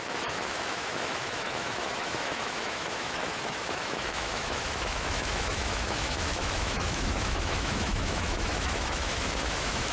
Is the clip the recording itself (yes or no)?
no